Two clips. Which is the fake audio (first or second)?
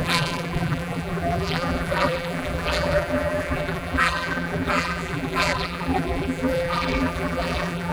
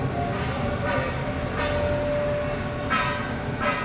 first